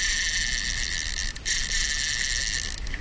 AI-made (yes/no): no